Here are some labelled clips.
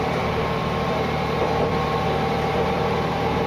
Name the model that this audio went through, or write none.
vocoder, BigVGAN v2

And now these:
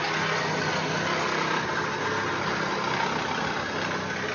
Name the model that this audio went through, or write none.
none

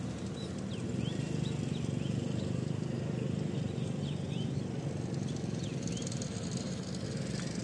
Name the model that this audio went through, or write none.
none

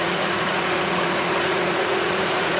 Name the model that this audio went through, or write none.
vocoder, Vocos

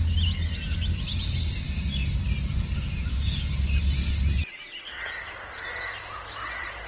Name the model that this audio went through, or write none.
none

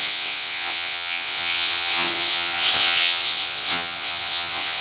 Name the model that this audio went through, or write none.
vocoder, WaveNeXt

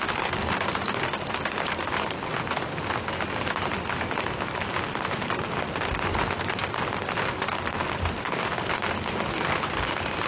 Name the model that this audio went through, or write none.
none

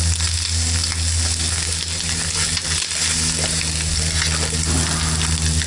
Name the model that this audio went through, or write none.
none